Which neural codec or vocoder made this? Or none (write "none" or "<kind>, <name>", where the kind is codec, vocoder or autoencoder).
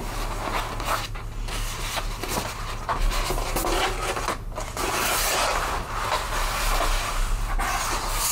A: none